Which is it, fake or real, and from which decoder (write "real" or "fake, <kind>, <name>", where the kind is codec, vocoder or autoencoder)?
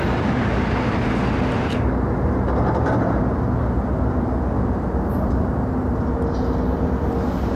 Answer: real